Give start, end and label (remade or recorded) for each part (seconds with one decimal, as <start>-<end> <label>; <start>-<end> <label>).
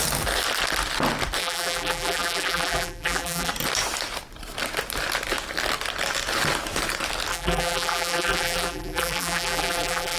0.0-1.4 recorded; 1.4-3.5 remade; 3.5-7.3 recorded; 7.3-10.2 remade